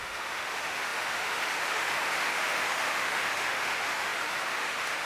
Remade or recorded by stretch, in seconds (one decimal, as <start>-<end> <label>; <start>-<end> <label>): 0.0-5.1 remade